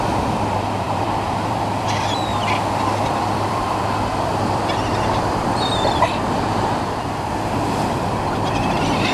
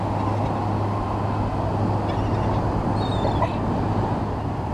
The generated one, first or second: first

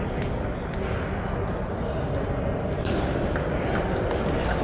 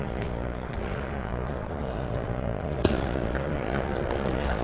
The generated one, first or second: second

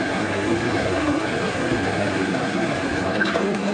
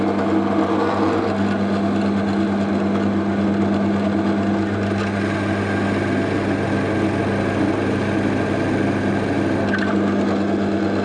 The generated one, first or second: first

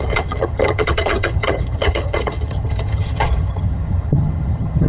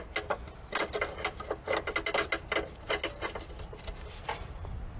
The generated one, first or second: first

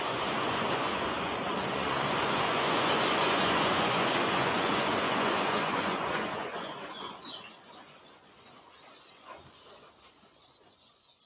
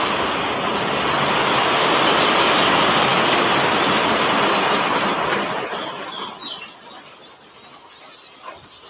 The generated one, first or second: first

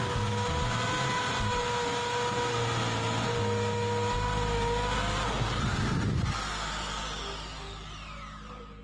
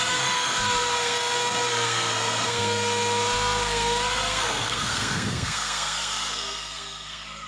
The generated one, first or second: second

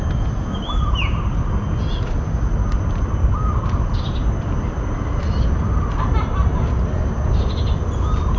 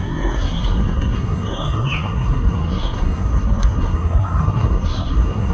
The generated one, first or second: second